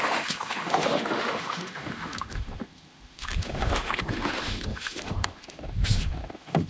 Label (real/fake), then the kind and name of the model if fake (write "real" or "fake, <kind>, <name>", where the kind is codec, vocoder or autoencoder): fake, autoencoder, DAC-VAE